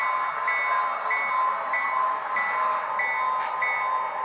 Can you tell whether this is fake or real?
real